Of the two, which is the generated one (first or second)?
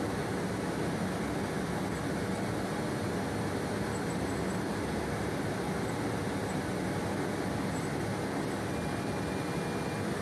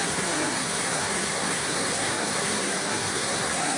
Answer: second